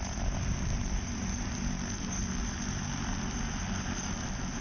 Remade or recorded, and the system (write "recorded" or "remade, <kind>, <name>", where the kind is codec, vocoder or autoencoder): recorded